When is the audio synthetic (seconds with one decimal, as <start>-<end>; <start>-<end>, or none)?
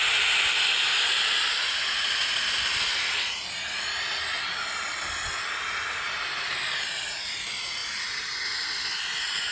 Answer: none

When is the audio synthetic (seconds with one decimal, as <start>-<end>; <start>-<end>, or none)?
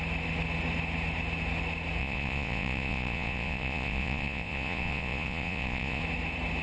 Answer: 2.0-6.0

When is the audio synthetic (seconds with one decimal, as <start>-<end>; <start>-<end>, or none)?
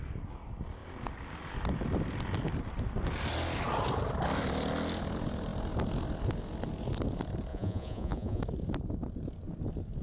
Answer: 7.5-8.4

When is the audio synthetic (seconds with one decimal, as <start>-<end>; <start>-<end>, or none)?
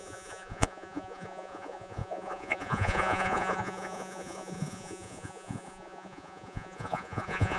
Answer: 0.0-7.6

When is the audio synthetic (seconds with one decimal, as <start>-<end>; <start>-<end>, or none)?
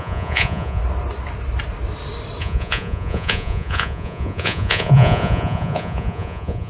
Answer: 0.0-0.8; 2.4-6.7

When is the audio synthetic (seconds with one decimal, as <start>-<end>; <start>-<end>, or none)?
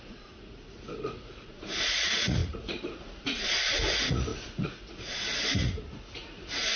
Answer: 0.0-6.8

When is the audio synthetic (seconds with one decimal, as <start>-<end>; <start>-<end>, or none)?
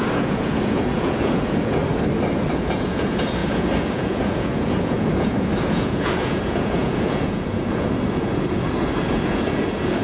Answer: 0.0-1.8; 2.5-10.0